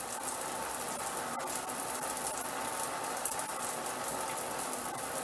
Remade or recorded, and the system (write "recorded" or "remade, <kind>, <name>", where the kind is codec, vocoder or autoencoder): recorded